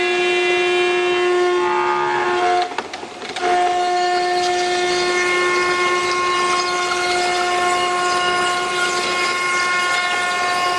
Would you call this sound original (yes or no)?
yes